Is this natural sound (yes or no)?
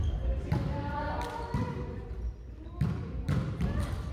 yes